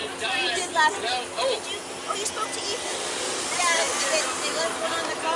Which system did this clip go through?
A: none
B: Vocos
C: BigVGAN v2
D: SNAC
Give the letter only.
A